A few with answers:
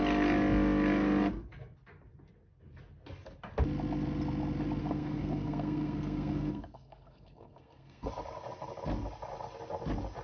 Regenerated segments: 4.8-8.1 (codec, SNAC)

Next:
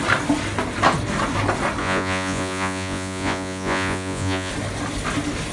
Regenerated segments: 1.8-4.5 (vocoder, Vocos)

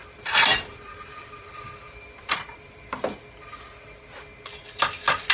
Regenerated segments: 0.0-3.2 (vocoder, BigVGAN v2)